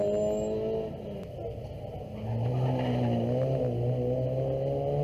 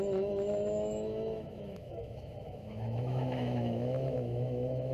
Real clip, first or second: first